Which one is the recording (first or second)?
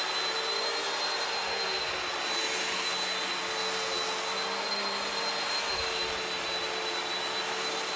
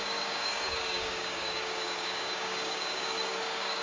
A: first